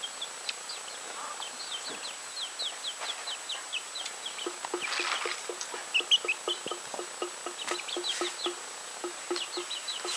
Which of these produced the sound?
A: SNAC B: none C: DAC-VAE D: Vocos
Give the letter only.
B